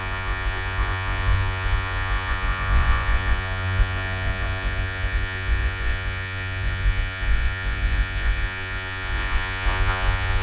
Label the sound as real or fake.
fake